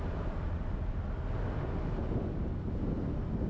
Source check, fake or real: real